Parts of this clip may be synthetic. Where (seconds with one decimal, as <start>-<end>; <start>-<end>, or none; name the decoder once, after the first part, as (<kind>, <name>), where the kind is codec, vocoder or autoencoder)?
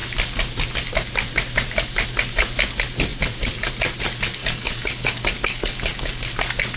4.4-6.2 (codec, DAC)